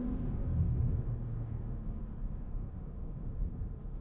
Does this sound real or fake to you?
fake